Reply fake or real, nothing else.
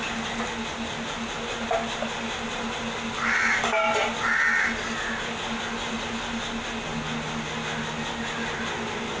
real